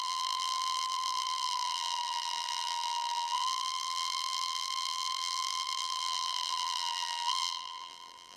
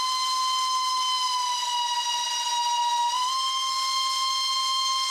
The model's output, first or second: first